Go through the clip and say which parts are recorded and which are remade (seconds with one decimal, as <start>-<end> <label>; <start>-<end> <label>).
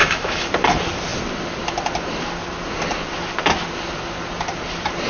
0.0-0.5 remade; 0.5-5.1 recorded